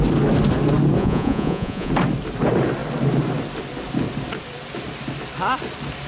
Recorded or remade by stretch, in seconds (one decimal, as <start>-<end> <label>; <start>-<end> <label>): 0.0-1.0 recorded; 1.0-1.9 remade; 1.9-6.1 recorded